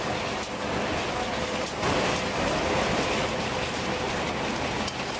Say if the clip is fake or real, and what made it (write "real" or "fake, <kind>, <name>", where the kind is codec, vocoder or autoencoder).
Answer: real